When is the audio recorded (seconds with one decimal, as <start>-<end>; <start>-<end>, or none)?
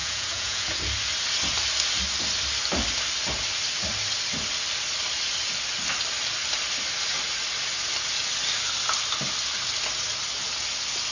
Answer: 0.8-11.1